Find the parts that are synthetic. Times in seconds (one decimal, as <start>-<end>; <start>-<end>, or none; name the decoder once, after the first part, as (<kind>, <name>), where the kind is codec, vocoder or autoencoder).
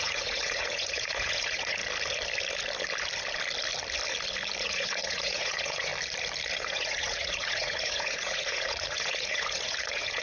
0.0-1.8 (vocoder, Vocos); 4.6-5.9; 6.6-10.2